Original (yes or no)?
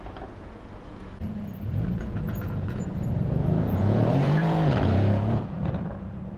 no